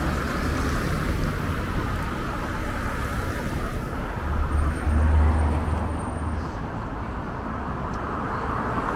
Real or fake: real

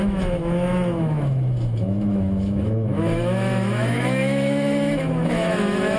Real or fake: fake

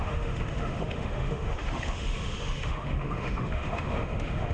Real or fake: fake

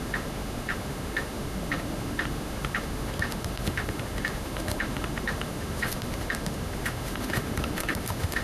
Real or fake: fake